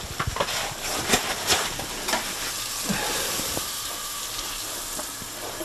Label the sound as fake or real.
real